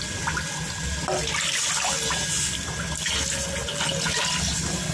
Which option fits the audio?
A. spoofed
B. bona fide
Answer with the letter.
B